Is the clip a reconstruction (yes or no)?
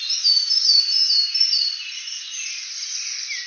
no